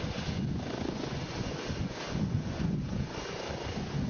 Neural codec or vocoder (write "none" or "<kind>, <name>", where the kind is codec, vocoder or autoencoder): vocoder, Vocos